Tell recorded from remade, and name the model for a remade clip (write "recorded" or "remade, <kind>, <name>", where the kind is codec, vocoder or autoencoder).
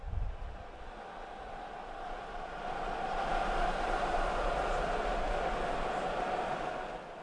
recorded